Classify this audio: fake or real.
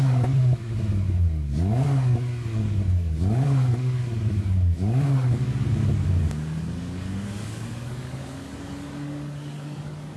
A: fake